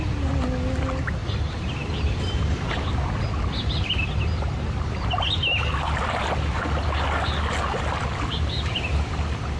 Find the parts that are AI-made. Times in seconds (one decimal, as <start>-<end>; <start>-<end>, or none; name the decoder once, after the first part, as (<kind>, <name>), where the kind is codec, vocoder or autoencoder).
1.2-4.6 (vocoder, BigVGAN v2)